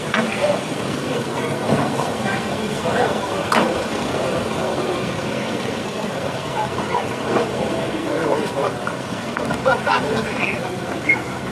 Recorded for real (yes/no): no